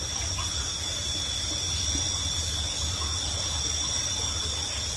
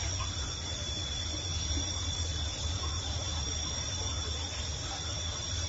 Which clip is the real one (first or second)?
first